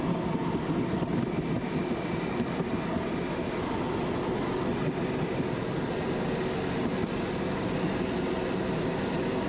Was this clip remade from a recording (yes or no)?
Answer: no